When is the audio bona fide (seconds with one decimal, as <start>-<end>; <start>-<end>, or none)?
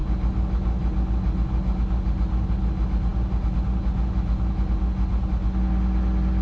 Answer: 0.0-6.4